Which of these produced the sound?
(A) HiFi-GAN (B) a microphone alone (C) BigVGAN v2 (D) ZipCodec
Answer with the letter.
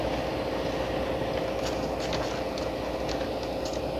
B